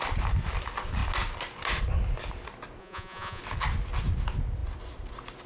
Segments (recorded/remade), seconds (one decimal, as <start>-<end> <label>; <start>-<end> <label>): 0.0-2.8 recorded; 2.8-3.4 remade; 3.4-5.5 recorded